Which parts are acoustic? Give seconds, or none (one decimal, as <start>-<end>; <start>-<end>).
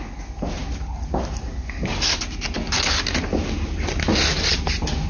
0.0-5.1